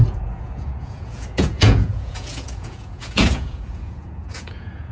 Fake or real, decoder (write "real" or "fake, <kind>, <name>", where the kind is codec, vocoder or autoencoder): fake, vocoder, Vocos